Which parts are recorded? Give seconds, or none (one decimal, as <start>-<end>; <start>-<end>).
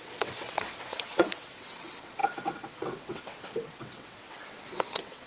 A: none